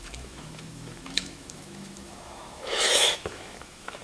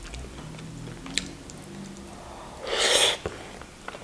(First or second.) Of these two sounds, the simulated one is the first